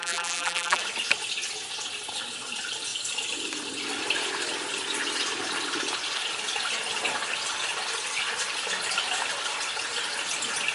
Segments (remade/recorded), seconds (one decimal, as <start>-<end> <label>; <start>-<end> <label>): 0.0-0.8 remade; 0.8-10.7 recorded